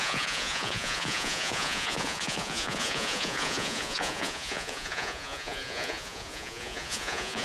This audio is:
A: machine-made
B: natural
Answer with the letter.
A